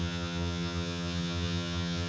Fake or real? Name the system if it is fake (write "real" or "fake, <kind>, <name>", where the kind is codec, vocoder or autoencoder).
fake, vocoder, HiFi-GAN